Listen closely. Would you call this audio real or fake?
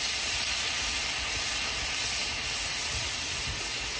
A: real